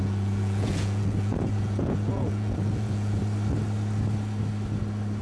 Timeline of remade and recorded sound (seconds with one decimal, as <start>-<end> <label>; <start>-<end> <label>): 0.0-3.2 remade; 3.2-5.2 recorded